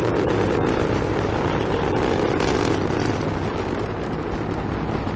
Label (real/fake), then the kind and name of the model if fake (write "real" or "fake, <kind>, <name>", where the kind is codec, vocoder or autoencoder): real